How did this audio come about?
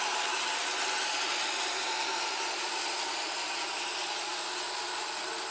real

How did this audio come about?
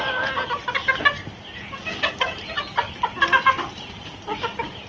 real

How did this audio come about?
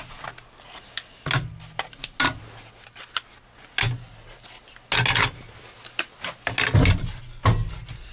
real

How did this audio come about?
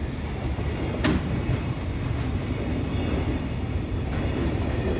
real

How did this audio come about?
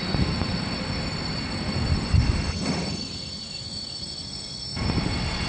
real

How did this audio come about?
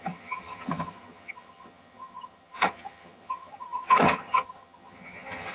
fake